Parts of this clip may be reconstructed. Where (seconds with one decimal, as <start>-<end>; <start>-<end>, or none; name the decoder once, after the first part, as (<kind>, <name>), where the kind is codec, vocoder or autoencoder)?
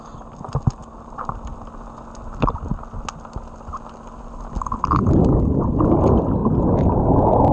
0.0-0.8 (vocoder, BigVGAN v2); 4.6-7.5